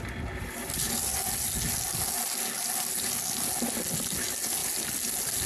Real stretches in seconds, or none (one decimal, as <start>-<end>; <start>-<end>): 0.0-5.5